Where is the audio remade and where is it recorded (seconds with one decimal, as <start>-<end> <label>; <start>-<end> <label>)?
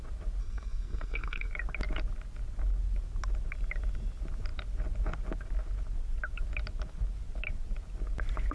0.0-0.4 recorded; 0.4-1.5 remade; 1.5-8.5 recorded